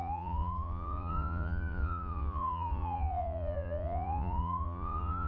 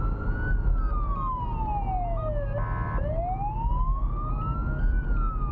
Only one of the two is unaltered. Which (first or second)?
second